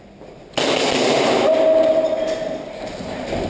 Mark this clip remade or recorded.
recorded